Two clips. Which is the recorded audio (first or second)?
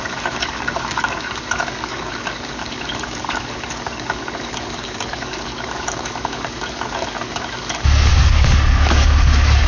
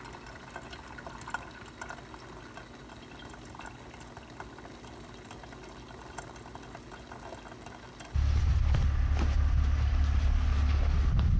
second